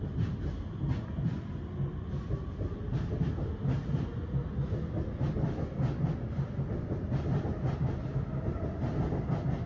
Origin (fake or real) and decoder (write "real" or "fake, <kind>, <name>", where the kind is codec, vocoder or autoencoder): real